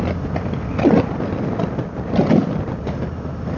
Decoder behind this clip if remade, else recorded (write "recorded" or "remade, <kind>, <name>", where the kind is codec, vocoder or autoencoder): recorded